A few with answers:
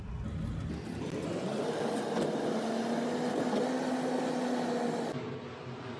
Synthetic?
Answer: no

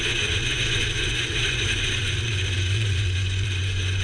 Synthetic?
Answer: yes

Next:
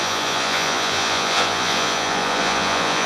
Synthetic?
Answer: yes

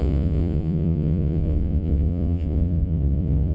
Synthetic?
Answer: yes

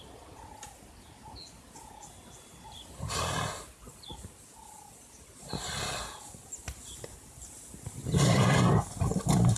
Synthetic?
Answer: no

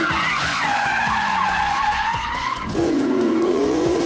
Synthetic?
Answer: yes